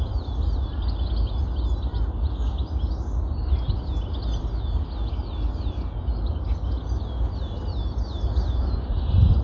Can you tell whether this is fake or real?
real